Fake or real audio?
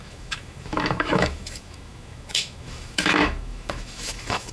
fake